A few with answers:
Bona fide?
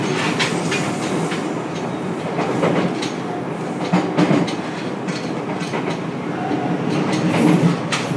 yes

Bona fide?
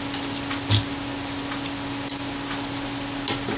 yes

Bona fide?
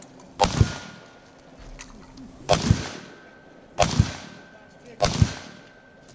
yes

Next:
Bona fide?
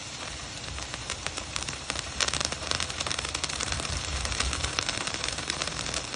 no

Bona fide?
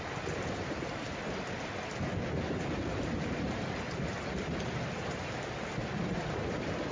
no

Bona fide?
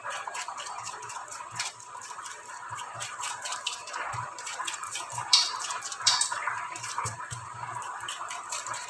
no